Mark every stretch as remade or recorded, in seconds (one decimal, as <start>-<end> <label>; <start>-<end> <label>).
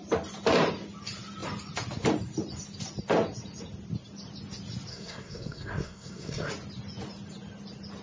0.0-4.9 recorded; 4.9-6.5 remade; 6.5-8.0 recorded